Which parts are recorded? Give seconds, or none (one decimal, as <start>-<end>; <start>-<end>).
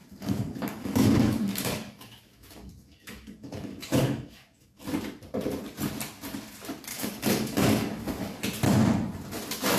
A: 4.8-6.9; 8.4-9.8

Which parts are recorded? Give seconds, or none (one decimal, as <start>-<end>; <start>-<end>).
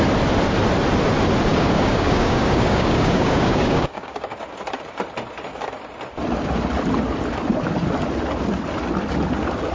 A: 0.0-1.5; 4.4-9.7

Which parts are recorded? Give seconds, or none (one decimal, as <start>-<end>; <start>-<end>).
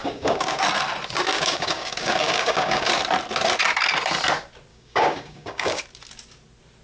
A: 0.6-1.3; 2.9-4.7; 5.8-6.8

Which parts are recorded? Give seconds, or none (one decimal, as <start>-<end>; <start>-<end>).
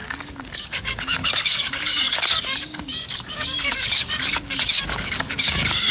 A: none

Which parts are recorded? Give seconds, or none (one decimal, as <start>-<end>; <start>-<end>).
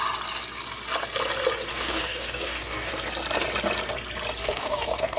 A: 0.0-1.7; 2.9-4.4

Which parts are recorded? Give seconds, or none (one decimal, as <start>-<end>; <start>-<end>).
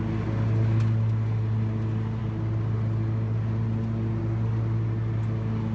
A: 0.0-5.7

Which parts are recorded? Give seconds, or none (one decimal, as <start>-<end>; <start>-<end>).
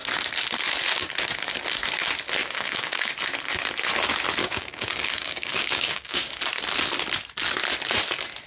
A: 0.0-2.4; 3.1-4.4; 6.3-8.5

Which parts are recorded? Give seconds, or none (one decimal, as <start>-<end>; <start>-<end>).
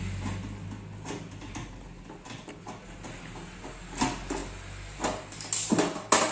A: 0.0-6.3